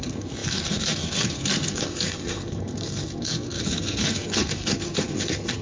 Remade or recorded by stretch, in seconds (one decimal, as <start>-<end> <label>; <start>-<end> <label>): 0.0-5.6 remade